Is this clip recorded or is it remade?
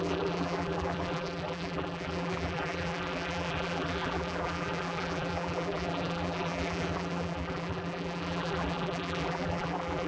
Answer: remade